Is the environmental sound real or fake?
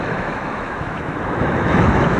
fake